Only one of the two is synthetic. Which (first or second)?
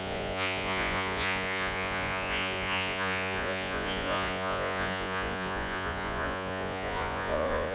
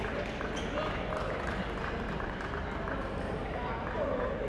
first